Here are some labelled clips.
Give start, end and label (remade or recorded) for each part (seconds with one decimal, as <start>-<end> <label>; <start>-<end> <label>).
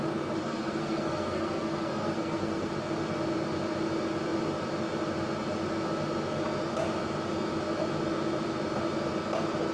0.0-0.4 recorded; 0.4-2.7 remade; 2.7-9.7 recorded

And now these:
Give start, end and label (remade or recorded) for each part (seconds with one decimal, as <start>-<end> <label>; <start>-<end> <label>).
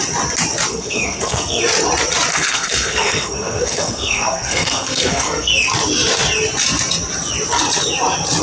0.0-0.7 recorded; 0.7-1.6 remade; 1.6-2.3 recorded; 2.3-5.5 remade; 5.5-8.4 recorded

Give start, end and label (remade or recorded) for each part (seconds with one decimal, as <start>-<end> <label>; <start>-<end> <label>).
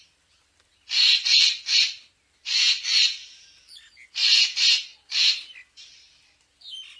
0.0-7.0 recorded